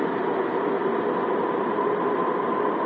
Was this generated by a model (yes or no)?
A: no